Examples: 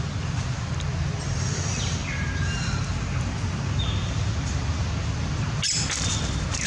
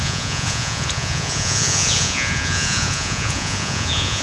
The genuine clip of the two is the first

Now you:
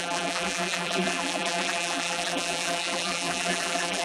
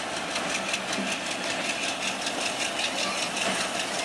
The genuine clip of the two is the second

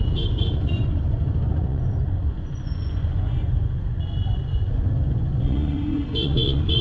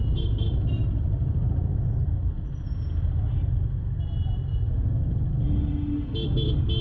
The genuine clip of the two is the second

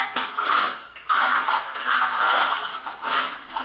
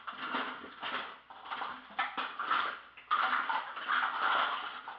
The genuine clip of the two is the second